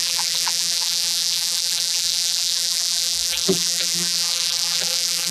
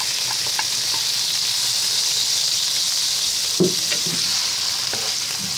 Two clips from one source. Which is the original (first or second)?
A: second